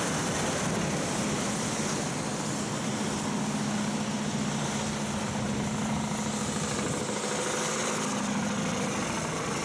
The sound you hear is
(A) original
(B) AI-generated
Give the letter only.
A